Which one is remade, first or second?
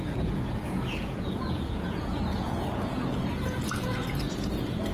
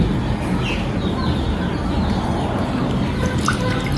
first